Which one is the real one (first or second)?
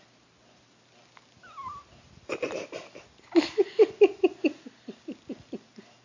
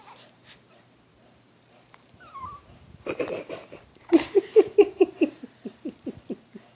first